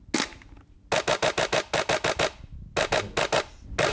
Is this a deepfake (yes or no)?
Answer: no